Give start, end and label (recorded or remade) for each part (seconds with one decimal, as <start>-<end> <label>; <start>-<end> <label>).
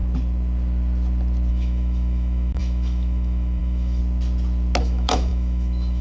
0.0-1.5 recorded; 1.5-4.0 remade; 4.0-4.8 recorded; 4.8-6.0 remade